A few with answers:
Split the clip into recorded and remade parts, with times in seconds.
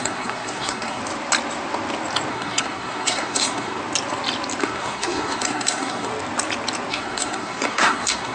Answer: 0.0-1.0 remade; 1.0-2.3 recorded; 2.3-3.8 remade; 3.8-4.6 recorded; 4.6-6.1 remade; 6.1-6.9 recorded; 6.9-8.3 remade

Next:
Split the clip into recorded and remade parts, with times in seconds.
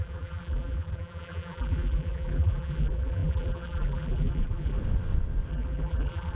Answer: 0.0-4.8 remade; 4.8-5.5 recorded; 5.5-6.4 remade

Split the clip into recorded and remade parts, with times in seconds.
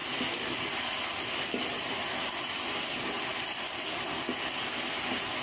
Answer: 0.0-5.4 recorded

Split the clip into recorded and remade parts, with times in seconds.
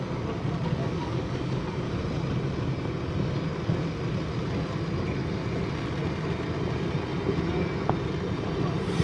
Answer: 0.0-0.8 recorded; 0.8-2.0 remade; 2.0-9.0 recorded